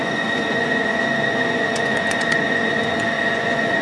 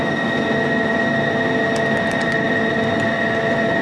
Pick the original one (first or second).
second